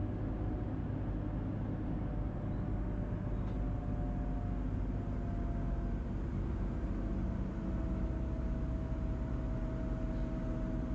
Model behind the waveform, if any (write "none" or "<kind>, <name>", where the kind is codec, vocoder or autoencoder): none